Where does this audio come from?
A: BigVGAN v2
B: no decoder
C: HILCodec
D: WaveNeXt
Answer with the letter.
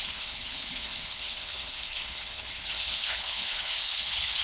C